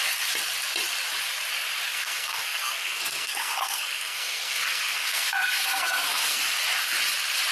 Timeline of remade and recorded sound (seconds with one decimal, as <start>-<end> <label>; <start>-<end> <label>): 0.0-1.9 recorded; 1.9-6.4 remade; 6.4-7.5 recorded